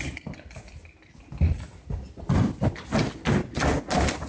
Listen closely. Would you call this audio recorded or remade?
recorded